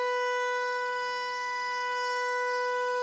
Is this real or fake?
fake